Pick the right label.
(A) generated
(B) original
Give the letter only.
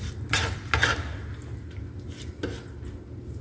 B